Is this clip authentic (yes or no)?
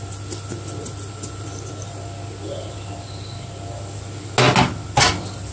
yes